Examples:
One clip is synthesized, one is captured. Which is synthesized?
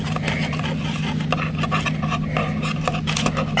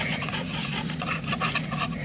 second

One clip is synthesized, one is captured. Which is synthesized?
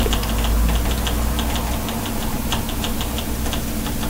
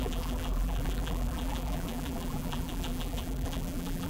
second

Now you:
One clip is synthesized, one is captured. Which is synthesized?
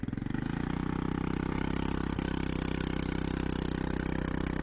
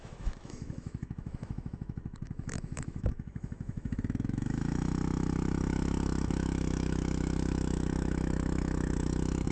second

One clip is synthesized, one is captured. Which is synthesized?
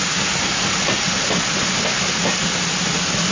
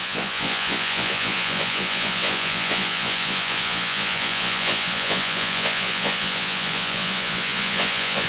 second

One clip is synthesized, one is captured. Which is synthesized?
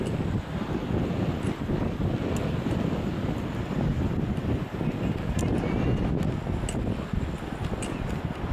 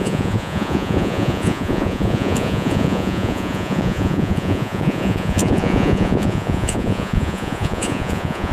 second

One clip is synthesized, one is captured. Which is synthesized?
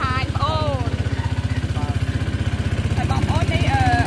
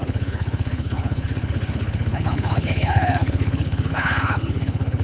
second